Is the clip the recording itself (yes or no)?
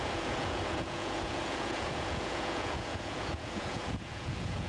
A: no